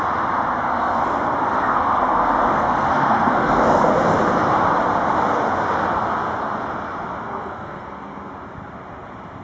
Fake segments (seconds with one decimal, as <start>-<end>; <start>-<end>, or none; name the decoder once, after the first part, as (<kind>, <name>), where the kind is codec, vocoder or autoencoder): 0.6-3.8 (codec, SNAC); 7.2-8.3